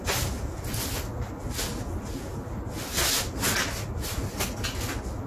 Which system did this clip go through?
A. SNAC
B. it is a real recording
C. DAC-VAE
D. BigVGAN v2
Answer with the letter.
B